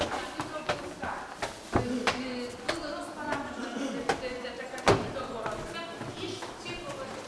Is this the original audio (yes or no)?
yes